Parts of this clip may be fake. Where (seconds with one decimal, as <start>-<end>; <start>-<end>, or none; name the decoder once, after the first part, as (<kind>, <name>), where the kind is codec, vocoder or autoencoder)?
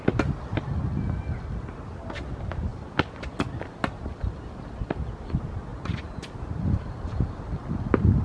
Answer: 2.7-3.5 (vocoder, BigVGAN v2); 5.7-7.4